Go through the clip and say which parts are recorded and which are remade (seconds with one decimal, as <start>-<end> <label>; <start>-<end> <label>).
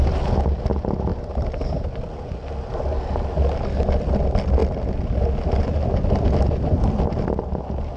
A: 0.0-8.0 recorded